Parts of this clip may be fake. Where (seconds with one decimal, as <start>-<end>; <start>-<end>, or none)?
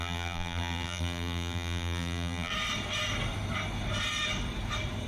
0.0-2.5